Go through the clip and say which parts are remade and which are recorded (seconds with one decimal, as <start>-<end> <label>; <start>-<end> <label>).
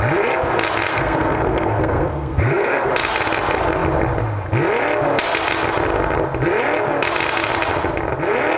0.0-0.9 recorded; 0.9-2.9 remade; 2.9-8.6 recorded